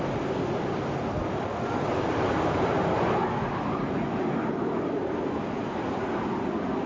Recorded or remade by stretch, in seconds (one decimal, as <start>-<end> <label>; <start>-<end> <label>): 0.0-6.9 recorded